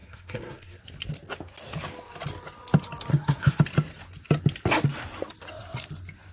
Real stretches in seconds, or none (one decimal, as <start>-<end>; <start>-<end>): 0.8-3.1; 3.6-6.3